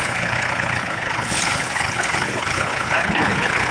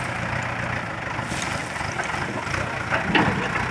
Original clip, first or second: second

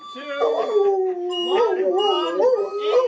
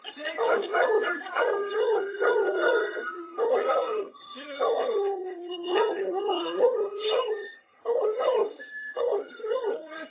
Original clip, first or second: first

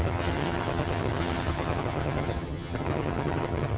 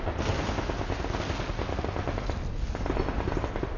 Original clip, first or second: second